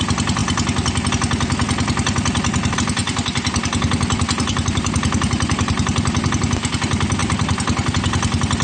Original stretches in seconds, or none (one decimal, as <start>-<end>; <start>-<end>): 0.0-8.6